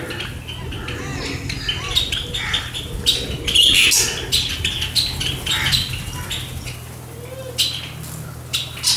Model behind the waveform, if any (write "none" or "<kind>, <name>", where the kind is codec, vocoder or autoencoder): none